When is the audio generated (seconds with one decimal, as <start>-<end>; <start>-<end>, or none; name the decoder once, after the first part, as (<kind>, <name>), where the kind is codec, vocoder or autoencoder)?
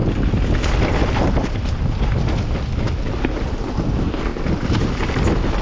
none